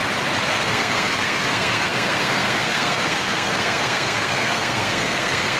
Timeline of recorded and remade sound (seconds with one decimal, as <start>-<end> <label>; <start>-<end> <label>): 0.0-0.5 recorded; 0.5-5.6 remade